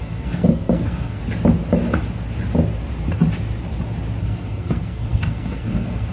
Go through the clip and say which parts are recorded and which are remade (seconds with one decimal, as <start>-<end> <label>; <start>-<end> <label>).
0.0-1.2 remade; 1.2-4.2 recorded; 4.2-6.1 remade